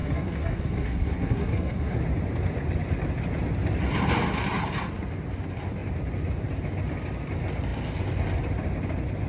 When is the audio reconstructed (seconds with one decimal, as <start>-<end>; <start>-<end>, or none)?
0.0-2.0